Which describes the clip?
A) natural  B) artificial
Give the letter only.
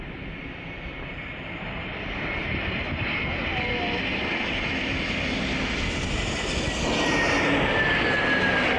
A